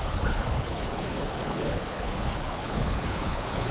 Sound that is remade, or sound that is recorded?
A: remade